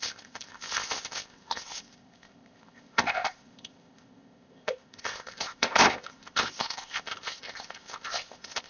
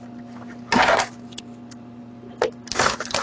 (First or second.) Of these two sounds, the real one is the second